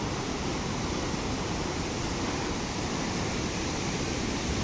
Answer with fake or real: real